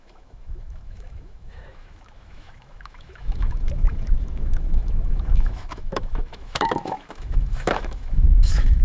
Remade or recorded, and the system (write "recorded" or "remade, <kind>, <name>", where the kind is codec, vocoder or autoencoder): remade, autoencoder, DAC-VAE